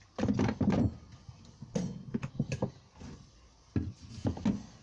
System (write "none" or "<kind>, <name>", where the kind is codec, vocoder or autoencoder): none